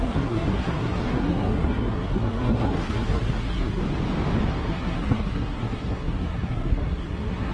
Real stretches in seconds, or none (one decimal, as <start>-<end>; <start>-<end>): 3.8-4.5